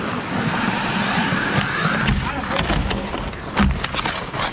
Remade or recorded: recorded